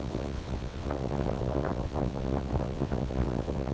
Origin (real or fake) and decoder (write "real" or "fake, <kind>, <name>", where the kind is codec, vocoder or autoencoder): fake, vocoder, WaveNeXt